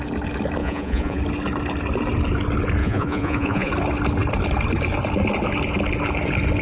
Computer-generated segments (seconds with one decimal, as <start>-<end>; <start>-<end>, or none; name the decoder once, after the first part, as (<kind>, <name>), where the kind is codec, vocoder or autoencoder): 0.6-1.2 (vocoder, Vocos); 2.8-3.7